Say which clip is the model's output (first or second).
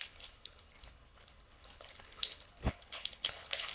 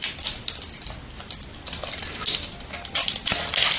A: first